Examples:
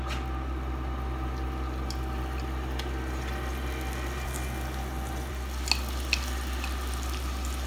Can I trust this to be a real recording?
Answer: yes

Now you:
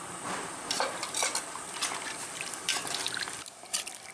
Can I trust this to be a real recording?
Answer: no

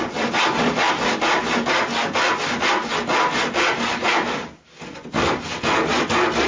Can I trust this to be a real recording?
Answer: yes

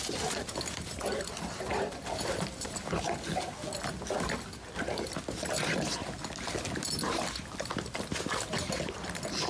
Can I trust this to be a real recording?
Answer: yes